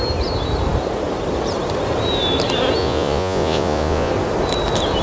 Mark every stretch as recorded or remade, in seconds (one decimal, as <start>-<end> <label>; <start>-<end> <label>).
0.0-2.8 recorded; 2.8-4.1 remade; 4.1-5.0 recorded

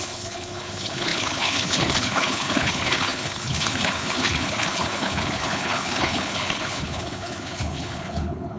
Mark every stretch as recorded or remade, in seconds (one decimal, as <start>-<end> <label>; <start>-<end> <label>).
0.0-8.6 remade

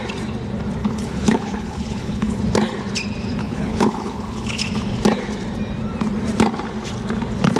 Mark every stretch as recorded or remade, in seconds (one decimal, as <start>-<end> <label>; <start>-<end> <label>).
0.0-0.8 recorded; 0.8-2.4 remade; 2.4-3.4 recorded; 3.4-4.7 remade; 4.7-7.6 recorded

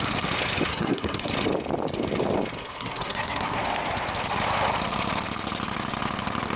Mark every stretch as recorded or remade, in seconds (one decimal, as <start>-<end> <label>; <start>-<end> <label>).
0.0-0.7 recorded; 0.7-1.3 remade; 1.3-2.6 recorded; 2.6-3.6 remade; 3.6-6.6 recorded

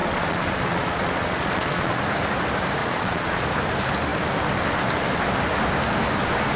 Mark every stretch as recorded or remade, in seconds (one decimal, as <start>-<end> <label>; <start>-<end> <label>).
0.0-2.0 remade; 2.0-2.8 recorded; 2.8-3.4 remade; 3.4-6.6 recorded

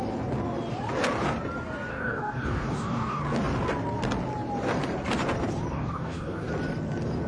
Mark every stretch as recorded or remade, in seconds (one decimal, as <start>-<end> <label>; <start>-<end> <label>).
0.0-1.9 recorded; 1.9-3.2 remade; 3.2-5.7 recorded; 5.7-6.5 remade; 6.5-7.3 recorded

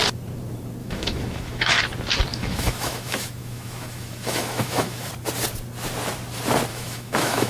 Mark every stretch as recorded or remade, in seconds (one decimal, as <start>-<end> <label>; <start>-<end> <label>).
0.0-0.8 recorded; 0.8-1.8 remade; 1.8-2.3 recorded; 2.3-5.1 remade; 5.1-6.7 recorded; 6.7-7.5 remade

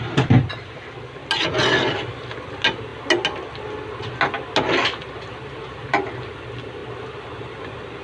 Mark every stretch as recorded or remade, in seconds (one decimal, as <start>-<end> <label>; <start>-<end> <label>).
0.0-8.0 recorded